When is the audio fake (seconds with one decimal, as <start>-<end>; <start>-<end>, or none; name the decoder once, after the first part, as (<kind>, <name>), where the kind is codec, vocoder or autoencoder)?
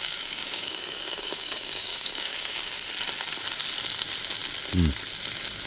0.0-2.8 (codec, DAC)